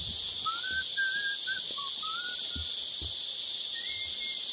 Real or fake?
real